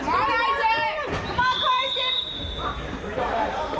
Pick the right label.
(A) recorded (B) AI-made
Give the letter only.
B